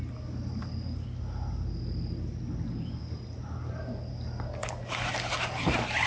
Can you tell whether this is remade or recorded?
recorded